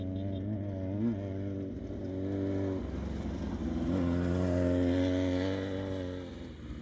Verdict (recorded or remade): recorded